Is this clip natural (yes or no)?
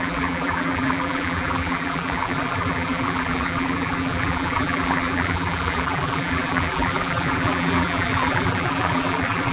no